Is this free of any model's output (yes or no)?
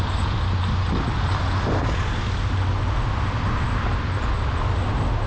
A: yes